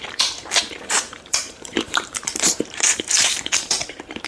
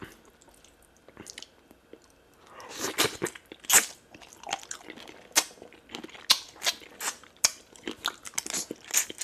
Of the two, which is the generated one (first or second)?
first